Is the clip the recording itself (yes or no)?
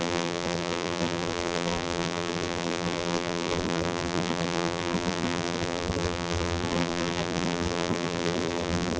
no